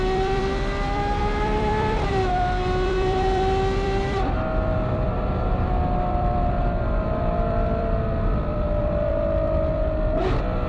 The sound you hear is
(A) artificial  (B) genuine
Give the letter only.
A